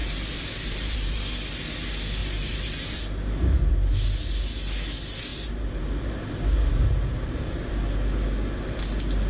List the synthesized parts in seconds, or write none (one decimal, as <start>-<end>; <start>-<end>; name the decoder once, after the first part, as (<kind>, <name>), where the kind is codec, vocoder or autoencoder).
0.0-1.2 (vocoder, BigVGAN v2); 2.2-3.6; 5.3-7.7